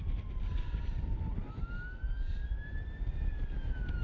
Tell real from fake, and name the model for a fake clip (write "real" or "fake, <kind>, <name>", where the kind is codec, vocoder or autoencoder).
real